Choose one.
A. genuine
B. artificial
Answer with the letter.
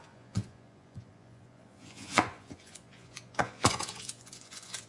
B